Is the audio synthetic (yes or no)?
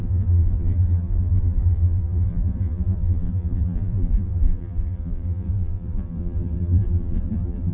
yes